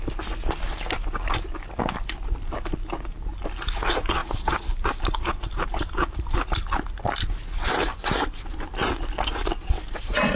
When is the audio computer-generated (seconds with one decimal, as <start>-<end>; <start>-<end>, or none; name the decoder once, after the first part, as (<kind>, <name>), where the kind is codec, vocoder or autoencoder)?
4.2-6.5 (vocoder, BigVGAN v2); 9.4-10.4